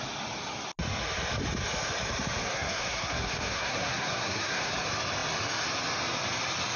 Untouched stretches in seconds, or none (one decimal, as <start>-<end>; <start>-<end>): 0.0-2.4; 4.7-6.8